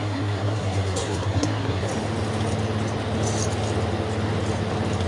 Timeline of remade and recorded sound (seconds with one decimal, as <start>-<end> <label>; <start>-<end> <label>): 0.0-1.9 remade; 1.9-5.1 recorded